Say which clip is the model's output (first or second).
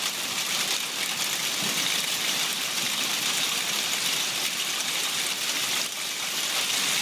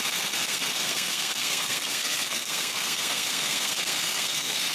second